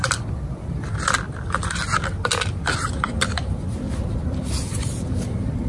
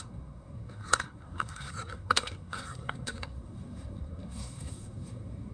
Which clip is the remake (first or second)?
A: second